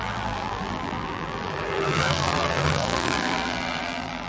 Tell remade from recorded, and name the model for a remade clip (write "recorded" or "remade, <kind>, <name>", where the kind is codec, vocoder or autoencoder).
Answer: remade, vocoder, BigVGAN v2